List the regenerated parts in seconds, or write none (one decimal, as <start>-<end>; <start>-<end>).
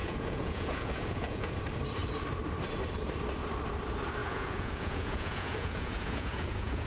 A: 0.0-1.5; 4.2-6.9